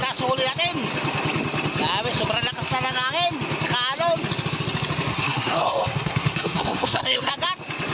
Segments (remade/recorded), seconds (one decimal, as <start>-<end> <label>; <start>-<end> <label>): 0.0-5.1 recorded; 5.1-7.3 remade; 7.3-7.9 recorded